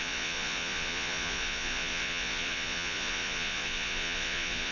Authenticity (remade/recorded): remade